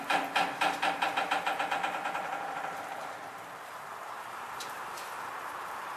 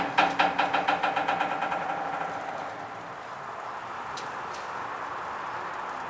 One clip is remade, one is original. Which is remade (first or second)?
first